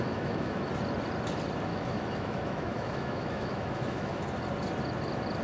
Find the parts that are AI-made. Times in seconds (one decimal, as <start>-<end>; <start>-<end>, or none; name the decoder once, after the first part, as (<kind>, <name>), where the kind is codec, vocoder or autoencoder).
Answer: 0.0-0.7 (autoencoder, DAC-VAE); 1.7-4.2